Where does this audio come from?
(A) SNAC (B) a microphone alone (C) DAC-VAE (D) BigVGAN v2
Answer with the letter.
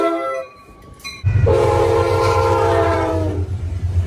D